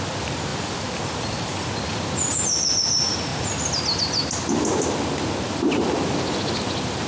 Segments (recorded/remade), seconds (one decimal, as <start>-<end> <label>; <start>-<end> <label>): 0.0-0.5 recorded; 0.5-1.7 remade; 1.7-7.1 recorded